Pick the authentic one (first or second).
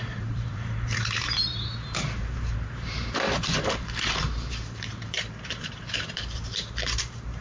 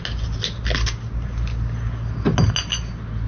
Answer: second